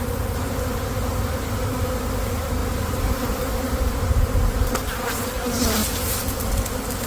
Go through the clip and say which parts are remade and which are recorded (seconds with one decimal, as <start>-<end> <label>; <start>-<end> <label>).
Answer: 0.0-7.1 recorded